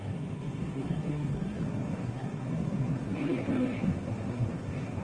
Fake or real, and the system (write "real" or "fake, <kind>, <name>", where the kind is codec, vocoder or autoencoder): fake, codec, SNAC